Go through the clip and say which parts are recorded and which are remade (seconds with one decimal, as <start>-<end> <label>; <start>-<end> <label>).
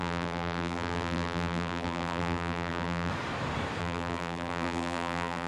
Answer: 0.0-3.1 remade; 3.1-3.8 recorded; 3.8-5.5 remade